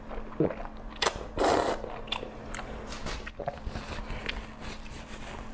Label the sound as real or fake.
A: real